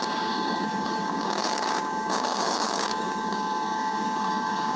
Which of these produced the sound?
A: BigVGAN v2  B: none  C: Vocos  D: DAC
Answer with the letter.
D